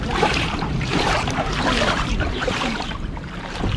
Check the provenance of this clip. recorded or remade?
remade